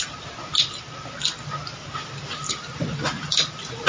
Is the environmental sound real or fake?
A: real